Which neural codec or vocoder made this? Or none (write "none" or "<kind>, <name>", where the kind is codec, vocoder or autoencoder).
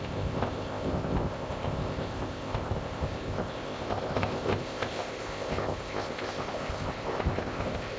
codec, ZipCodec